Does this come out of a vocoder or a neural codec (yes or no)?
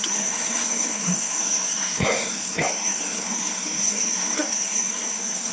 yes